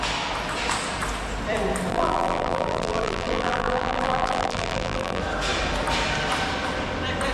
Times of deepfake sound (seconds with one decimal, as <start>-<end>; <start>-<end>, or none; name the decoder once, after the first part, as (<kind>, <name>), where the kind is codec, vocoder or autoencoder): 1.9-5.2 (vocoder, BigVGAN v2)

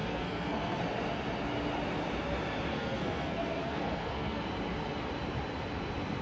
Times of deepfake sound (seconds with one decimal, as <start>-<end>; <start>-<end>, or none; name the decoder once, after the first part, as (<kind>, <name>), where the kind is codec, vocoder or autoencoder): 0.0-0.8 (codec, SNAC); 2.7-4.4